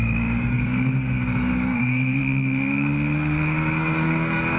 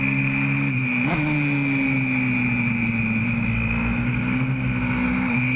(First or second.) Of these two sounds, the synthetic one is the first